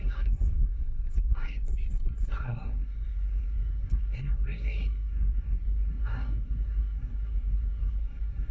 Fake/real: fake